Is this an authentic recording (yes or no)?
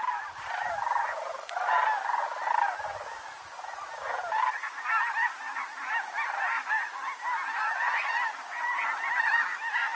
yes